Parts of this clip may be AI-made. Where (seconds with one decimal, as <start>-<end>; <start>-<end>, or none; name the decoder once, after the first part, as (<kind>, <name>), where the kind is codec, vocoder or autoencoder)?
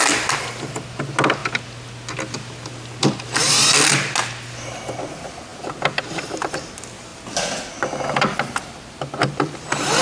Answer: none